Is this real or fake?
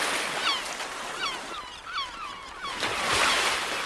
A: real